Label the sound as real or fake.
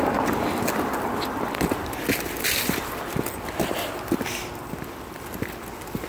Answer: real